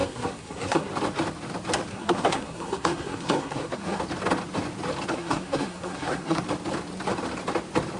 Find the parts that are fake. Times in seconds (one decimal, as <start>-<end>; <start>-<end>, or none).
0.0-0.9; 1.9-4.0; 5.1-6.4